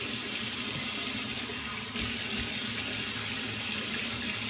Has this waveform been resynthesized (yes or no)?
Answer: no